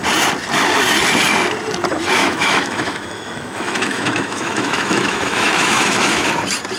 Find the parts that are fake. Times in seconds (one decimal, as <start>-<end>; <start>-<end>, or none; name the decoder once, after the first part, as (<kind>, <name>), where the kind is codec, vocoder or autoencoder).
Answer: 2.2-6.3 (autoencoder, DAC-VAE)

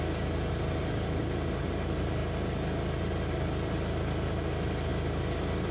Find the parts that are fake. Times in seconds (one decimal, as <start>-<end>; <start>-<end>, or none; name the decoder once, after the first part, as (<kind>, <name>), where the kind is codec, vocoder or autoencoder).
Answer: none

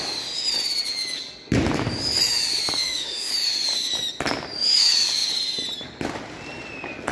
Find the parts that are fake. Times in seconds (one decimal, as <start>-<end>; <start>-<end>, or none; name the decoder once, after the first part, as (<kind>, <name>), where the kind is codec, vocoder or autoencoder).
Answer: 2.8-3.3 (autoencoder, DAC-VAE)

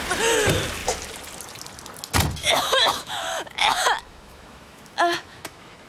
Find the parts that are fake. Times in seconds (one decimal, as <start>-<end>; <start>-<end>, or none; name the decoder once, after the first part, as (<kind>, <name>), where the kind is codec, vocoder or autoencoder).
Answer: 2.4-5.9 (autoencoder, DAC-VAE)

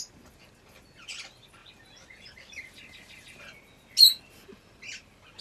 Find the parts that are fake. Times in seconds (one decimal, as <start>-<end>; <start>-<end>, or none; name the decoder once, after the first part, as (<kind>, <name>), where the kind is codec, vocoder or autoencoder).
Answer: none

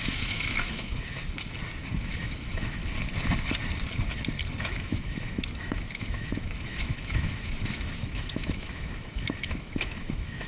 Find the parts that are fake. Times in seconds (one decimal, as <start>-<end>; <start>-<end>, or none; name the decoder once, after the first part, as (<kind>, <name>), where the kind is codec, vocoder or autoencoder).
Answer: 0.0-1.2 (autoencoder, DAC-VAE); 2.0-2.8; 4.6-10.5